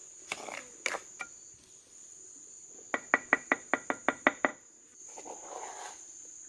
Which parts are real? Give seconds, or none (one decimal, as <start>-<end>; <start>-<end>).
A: 0.0-6.5